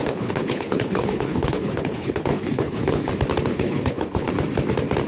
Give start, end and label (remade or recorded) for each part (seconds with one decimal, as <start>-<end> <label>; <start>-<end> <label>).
0.0-3.1 remade; 3.1-3.5 recorded; 3.5-4.3 remade; 4.3-5.1 recorded